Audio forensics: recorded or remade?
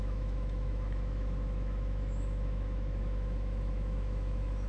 remade